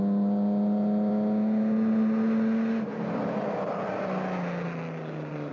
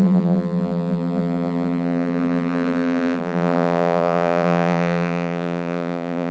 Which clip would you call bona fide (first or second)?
first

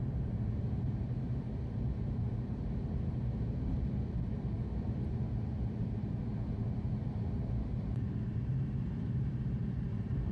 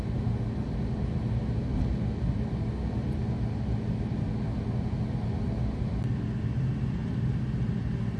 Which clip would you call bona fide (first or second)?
second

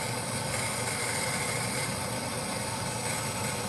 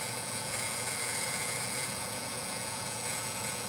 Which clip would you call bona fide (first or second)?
first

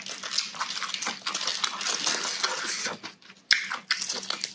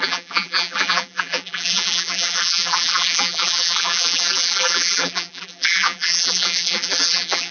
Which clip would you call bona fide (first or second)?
first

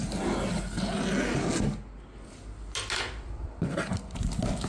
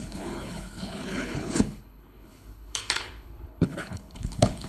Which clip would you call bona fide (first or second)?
first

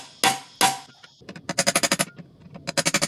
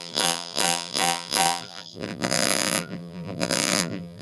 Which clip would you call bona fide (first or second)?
first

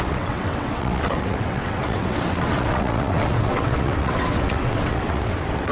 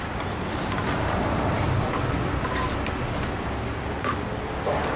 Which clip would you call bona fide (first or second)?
second